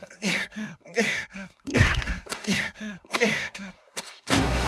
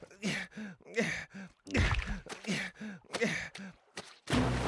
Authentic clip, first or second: second